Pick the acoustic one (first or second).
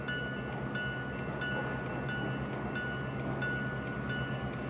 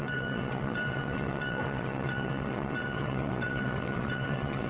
first